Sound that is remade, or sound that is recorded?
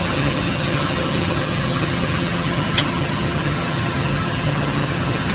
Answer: remade